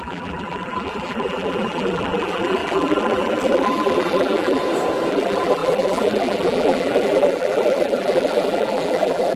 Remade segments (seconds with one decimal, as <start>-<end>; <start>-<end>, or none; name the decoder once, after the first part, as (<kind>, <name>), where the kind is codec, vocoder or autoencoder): 0.0-4.6 (vocoder, BigVGAN v2); 5.1-9.4